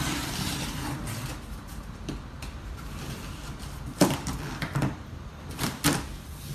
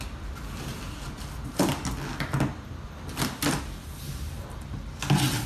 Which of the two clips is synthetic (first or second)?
first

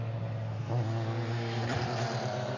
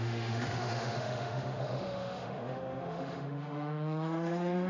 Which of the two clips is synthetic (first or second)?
second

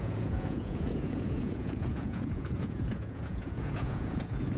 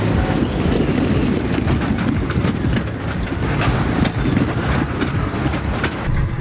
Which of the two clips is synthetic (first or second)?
first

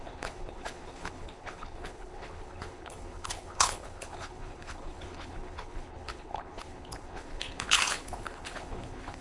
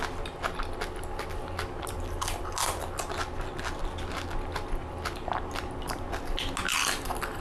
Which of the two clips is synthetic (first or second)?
first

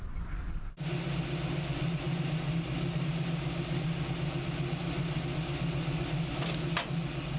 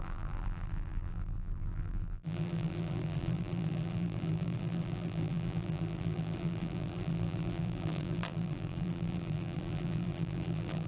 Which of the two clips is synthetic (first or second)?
second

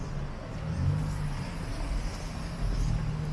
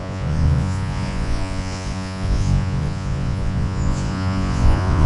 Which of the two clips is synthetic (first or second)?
second